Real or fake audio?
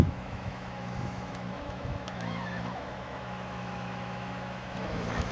fake